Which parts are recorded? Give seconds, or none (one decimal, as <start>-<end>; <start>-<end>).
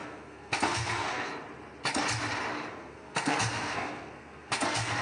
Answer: 1.3-2.7